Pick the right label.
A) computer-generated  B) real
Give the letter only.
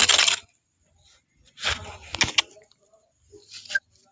B